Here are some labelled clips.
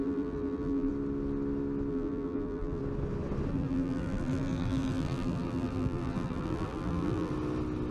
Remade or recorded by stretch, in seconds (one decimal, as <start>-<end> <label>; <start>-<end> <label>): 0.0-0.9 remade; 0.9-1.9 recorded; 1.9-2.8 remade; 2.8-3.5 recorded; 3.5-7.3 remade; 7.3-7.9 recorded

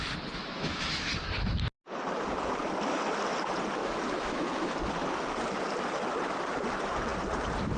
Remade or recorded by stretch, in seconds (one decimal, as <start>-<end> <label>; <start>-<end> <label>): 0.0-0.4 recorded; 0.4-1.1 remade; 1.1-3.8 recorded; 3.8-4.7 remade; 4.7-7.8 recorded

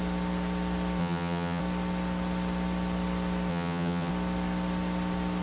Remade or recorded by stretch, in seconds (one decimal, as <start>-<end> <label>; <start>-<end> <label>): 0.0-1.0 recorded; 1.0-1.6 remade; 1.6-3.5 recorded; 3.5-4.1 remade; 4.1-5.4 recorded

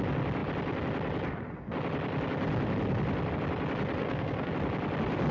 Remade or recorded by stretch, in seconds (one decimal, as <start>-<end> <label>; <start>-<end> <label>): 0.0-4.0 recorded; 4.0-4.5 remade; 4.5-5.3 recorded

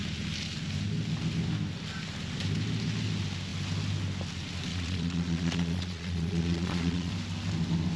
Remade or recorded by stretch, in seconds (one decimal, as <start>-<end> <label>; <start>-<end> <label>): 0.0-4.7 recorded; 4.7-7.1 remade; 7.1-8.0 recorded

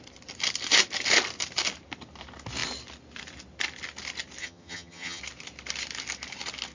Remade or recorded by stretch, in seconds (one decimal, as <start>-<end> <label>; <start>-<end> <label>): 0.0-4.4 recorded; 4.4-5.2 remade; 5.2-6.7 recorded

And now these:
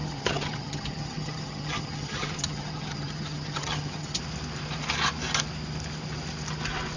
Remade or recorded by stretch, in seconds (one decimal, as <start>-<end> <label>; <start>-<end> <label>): 0.0-4.2 remade; 4.2-7.0 recorded